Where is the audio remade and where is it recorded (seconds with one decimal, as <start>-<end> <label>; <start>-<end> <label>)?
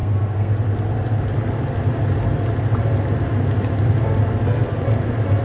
0.0-0.5 remade; 0.5-5.4 recorded